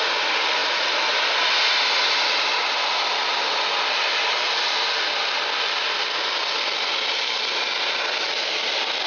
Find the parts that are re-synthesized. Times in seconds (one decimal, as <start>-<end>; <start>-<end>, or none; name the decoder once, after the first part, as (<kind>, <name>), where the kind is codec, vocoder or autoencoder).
none

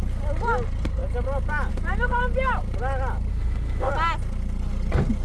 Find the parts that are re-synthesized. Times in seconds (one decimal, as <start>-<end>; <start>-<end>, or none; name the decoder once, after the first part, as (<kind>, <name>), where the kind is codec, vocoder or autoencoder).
3.3-3.9 (autoencoder, DAC-VAE)

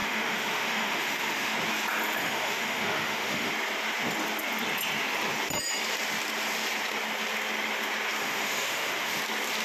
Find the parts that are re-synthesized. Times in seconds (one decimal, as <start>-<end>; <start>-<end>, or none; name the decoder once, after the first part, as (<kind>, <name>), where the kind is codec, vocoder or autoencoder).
0.0-1.5 (autoencoder, DAC-VAE); 2.2-3.5; 8.2-9.2

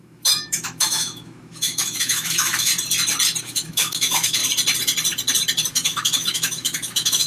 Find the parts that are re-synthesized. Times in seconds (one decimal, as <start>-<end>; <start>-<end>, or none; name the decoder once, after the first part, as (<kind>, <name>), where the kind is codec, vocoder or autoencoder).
0.0-2.7 (autoencoder, DAC-VAE); 3.4-4.4; 5.7-7.3

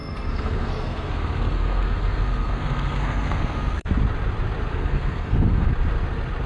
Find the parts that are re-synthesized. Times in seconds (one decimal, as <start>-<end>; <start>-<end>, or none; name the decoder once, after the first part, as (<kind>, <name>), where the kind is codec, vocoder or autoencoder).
0.0-3.9 (codec, SNAC); 4.7-5.7

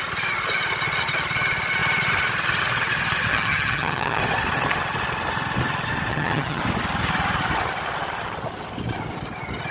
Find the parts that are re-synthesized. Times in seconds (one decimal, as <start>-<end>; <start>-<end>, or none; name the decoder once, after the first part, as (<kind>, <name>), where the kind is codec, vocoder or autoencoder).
3.3-4.2 (vocoder, HiFi-GAN); 6.1-6.6

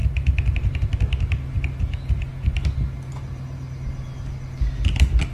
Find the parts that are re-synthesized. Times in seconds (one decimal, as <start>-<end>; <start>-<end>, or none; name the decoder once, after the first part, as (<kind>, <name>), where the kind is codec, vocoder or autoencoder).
none

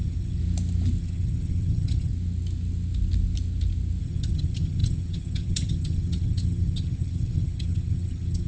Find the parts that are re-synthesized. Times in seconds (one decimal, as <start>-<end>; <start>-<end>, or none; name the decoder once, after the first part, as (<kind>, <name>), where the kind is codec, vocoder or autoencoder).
0.0-0.4 (vocoder, HiFi-GAN); 1.0-2.1; 4.0-8.5